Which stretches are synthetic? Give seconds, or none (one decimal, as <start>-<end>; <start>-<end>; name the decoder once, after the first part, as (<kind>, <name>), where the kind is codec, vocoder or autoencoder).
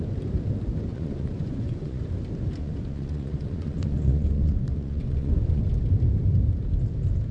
0.9-2.0 (vocoder, Vocos); 2.6-5.6